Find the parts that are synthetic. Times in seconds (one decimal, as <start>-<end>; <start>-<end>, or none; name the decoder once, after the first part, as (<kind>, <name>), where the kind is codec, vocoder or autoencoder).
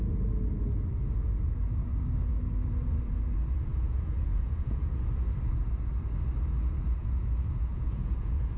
3.7-4.9 (vocoder, Vocos); 7.0-8.6